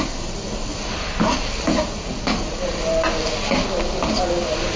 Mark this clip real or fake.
real